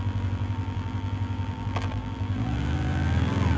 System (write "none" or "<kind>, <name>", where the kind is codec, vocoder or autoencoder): vocoder, BigVGAN v2